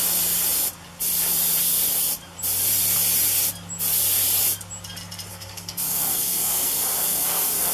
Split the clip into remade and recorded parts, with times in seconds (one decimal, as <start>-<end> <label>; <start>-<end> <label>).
0.0-5.3 recorded; 5.3-7.7 remade